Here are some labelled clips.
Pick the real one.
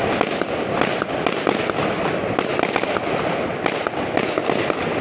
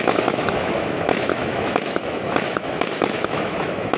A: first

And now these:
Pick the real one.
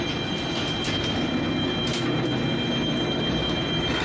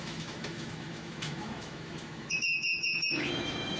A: first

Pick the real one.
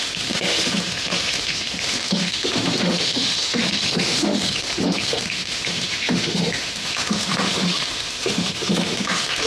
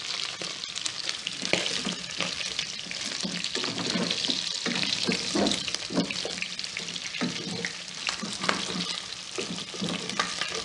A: second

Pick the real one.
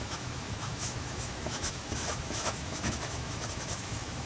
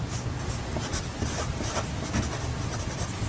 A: second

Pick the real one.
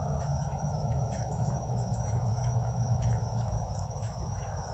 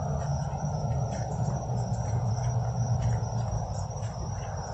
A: second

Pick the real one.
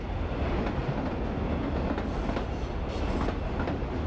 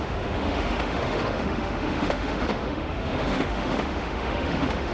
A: first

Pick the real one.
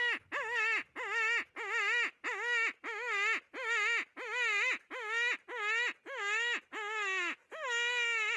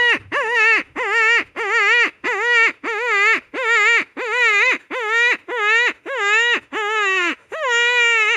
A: first